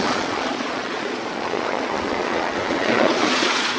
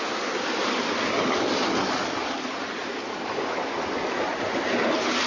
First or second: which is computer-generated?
first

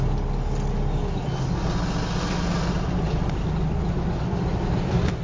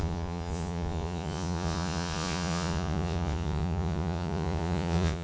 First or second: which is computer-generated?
second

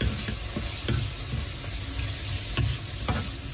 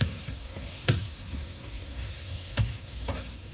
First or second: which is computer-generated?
second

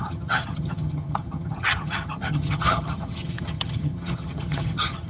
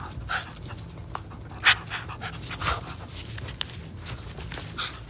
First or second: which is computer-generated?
first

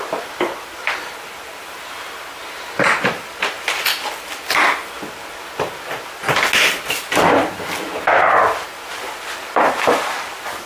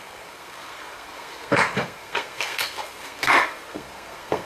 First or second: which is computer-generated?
second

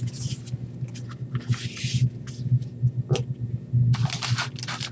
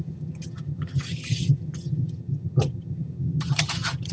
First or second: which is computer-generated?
second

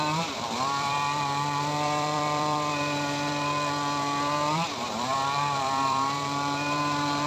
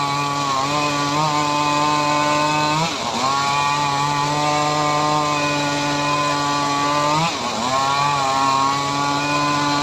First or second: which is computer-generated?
first